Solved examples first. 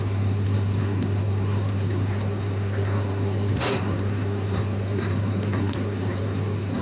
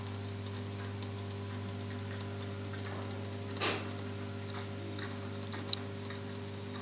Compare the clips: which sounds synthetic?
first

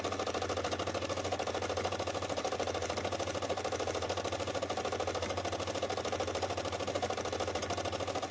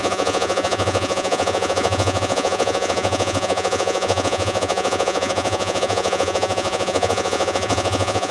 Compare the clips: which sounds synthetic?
second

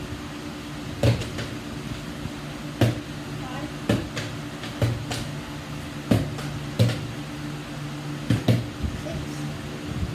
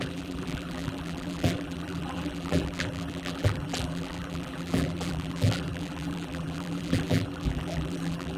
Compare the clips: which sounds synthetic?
second